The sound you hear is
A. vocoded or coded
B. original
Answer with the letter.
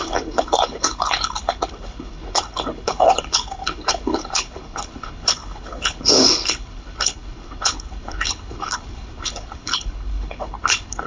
A